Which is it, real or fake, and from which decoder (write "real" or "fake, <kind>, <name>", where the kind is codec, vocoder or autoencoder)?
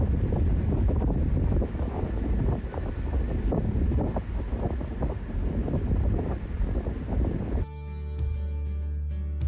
real